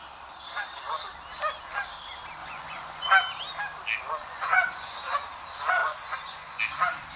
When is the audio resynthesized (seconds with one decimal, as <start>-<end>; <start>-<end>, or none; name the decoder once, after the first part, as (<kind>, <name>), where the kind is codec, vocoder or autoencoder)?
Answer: 2.4-3.1 (vocoder, Vocos); 4.2-4.9; 5.8-6.6

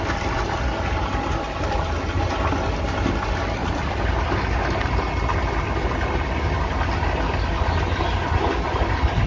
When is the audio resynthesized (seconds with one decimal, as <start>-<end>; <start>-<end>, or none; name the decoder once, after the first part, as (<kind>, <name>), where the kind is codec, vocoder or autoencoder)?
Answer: 3.6-4.4 (vocoder, BigVGAN v2)

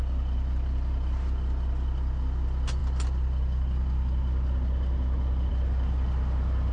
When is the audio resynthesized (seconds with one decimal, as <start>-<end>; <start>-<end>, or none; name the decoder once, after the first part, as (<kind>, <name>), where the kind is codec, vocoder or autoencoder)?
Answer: none

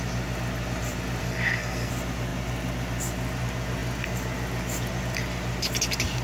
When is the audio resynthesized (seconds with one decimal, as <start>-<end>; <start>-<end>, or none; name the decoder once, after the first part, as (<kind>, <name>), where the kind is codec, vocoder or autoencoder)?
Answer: 1.2-1.9 (codec, SNAC)

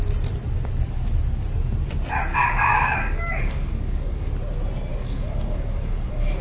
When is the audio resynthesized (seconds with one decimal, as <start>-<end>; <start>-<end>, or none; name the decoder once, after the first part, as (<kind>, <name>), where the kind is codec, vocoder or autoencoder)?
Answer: 2.3-4.3 (codec, DAC); 4.9-6.4

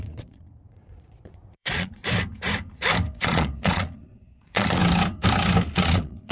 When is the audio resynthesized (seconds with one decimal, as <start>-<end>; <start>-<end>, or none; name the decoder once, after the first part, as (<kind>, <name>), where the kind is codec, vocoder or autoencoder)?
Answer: 0.0-2.0 (vocoder, Vocos); 3.1-4.8; 5.7-6.3

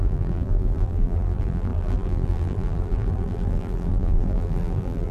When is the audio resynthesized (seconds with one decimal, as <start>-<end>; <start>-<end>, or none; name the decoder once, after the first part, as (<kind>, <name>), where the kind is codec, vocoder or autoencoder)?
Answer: 0.0-5.1 (vocoder, BigVGAN v2)